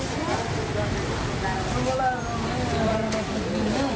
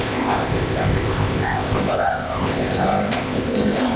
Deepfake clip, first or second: second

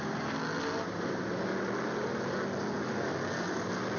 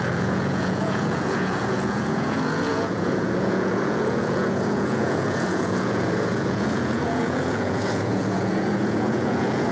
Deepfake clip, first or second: second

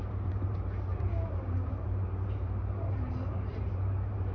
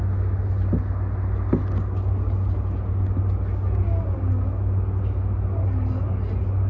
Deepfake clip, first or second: first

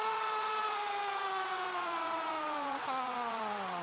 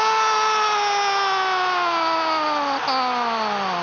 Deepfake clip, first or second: first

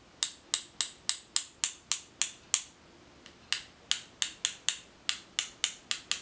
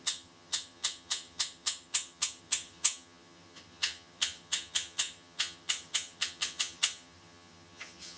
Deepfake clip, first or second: second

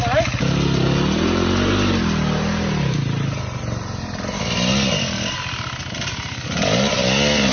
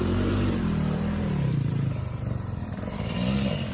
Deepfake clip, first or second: second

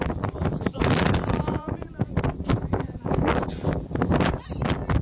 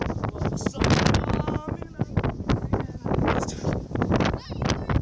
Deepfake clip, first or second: first